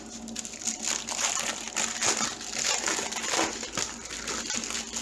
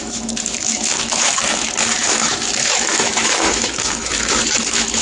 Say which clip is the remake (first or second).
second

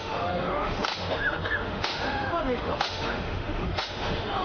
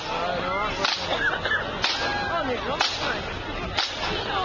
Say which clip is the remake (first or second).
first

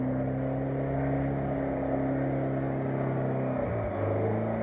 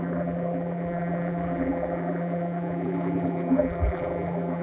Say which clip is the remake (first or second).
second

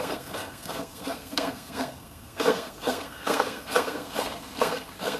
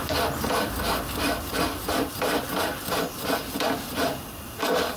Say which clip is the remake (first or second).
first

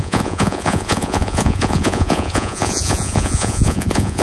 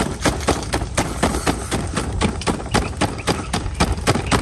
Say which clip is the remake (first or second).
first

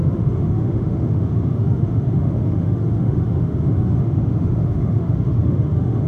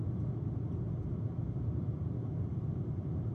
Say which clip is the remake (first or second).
first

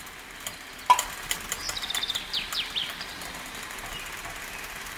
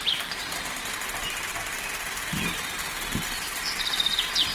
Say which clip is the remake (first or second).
first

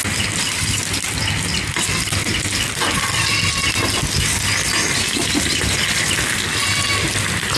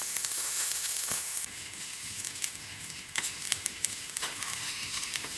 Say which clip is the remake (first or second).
second